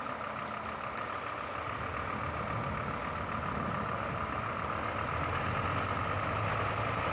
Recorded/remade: recorded